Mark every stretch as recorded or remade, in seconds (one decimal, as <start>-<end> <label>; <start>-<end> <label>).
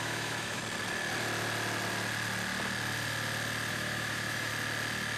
0.0-0.6 remade; 0.6-3.7 recorded; 3.7-4.5 remade; 4.5-5.2 recorded